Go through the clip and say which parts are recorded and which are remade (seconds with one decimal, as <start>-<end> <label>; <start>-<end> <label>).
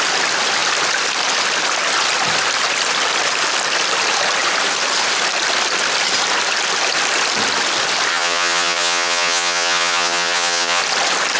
0.0-8.1 recorded; 8.1-10.8 remade; 10.8-11.4 recorded